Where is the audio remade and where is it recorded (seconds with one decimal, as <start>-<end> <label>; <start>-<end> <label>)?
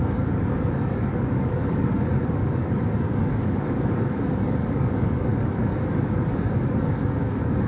0.0-7.7 remade